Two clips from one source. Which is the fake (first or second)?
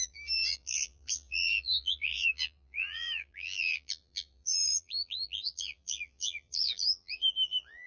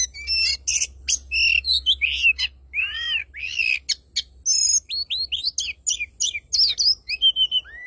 first